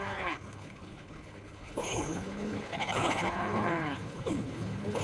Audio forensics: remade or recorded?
remade